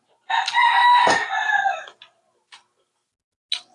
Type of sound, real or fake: real